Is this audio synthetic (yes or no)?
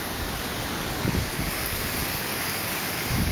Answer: yes